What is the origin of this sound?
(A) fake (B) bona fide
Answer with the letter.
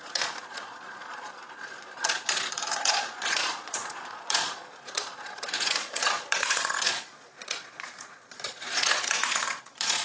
A